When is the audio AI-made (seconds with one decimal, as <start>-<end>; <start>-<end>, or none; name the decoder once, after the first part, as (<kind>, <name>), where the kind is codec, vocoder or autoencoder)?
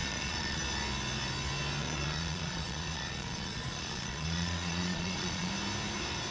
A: 0.0-0.6 (vocoder, Vocos); 1.8-5.5